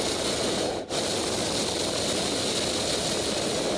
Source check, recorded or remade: recorded